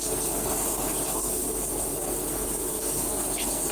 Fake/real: fake